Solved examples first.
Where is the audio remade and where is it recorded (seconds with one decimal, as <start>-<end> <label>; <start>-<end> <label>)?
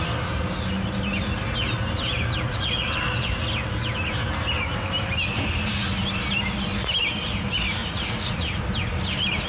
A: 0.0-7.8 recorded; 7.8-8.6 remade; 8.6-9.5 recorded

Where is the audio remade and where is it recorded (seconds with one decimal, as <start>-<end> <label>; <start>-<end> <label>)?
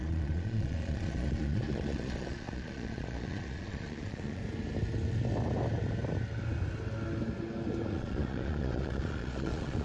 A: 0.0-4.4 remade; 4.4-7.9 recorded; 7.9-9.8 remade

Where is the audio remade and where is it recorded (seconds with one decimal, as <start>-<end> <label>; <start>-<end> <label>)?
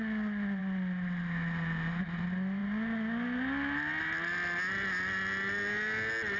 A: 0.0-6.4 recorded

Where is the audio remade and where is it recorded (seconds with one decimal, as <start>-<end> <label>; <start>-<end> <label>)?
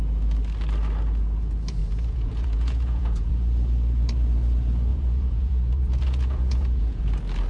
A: 0.0-1.8 recorded; 1.8-3.3 remade; 3.3-4.9 recorded; 4.9-7.1 remade; 7.1-7.5 recorded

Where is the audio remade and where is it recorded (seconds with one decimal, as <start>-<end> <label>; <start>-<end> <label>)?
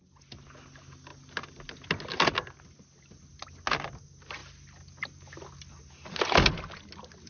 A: 0.0-7.3 recorded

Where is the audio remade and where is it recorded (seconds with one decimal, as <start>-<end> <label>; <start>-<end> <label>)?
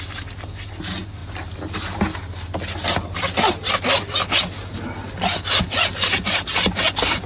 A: 0.0-7.3 recorded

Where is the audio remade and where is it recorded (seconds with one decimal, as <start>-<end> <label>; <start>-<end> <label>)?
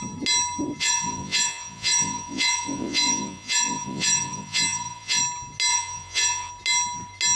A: 0.0-0.8 recorded; 0.8-5.2 remade; 5.2-5.7 recorded; 5.7-6.5 remade; 6.5-7.3 recorded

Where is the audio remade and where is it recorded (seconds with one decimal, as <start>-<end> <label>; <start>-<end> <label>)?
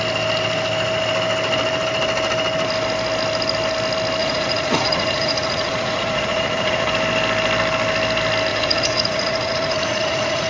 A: 0.0-4.2 recorded; 4.2-6.9 remade; 6.9-8.5 recorded; 8.5-10.5 remade